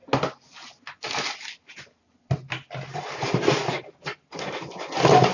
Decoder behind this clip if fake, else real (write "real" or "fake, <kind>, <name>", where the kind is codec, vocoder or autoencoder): real